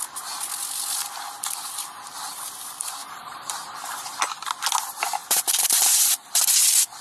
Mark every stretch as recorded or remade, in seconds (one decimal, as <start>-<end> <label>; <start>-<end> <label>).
0.0-3.0 recorded; 3.0-4.2 remade; 4.2-5.2 recorded; 5.2-6.4 remade; 6.4-7.0 recorded